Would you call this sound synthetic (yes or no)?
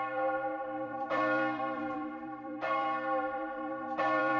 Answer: yes